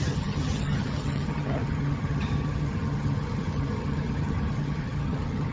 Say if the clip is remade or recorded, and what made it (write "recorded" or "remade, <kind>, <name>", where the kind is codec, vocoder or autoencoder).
remade, vocoder, HiFi-GAN